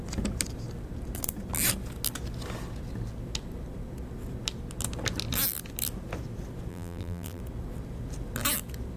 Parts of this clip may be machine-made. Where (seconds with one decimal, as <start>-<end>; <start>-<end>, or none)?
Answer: 6.7-7.4